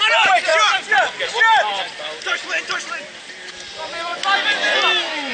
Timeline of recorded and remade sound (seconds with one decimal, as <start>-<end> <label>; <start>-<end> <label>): 0.0-5.3 recorded